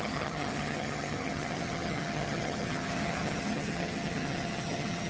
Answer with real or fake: fake